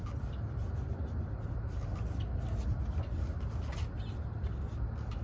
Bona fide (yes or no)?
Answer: yes